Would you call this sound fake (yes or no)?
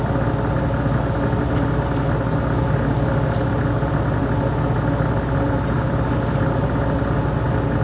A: no